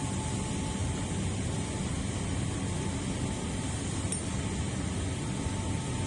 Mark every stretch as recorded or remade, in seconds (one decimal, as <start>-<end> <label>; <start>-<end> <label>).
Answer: 0.0-6.1 recorded